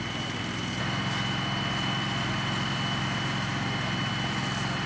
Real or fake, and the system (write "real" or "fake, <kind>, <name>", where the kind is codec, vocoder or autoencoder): real